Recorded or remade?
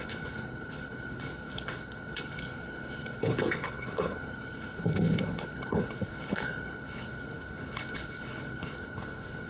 remade